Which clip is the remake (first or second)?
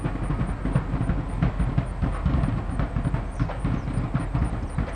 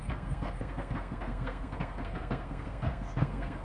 second